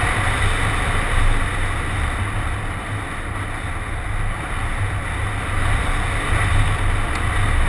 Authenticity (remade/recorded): recorded